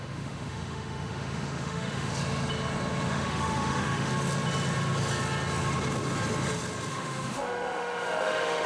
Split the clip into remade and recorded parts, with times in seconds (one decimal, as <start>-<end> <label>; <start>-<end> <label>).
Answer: 0.0-2.1 remade; 2.1-3.1 recorded; 3.1-4.1 remade; 4.1-6.9 recorded; 6.9-8.7 remade